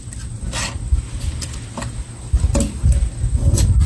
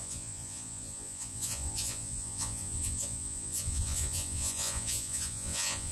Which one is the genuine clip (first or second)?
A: first